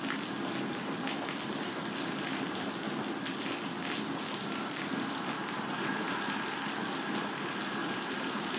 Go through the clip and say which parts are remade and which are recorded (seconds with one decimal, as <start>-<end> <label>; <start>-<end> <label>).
0.0-7.8 recorded; 7.8-8.6 remade